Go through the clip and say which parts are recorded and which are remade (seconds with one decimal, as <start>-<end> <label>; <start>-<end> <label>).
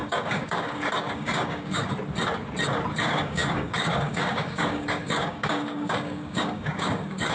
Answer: 0.0-1.8 remade; 1.8-3.0 recorded; 3.0-7.3 remade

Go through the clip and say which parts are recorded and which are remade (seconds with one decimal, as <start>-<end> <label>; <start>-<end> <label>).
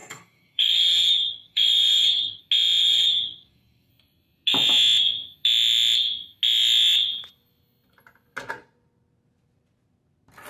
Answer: 0.0-2.4 remade; 2.4-2.8 recorded; 2.8-3.9 remade; 3.9-10.5 recorded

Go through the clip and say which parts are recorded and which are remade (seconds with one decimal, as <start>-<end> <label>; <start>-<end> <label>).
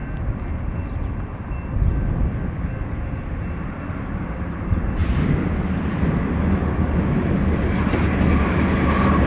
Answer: 0.0-9.3 recorded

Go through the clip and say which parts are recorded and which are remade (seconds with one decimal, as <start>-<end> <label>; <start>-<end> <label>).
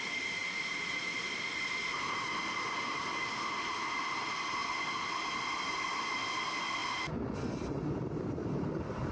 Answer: 0.0-9.1 recorded